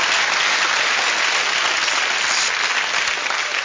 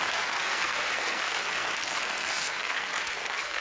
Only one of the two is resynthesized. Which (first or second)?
second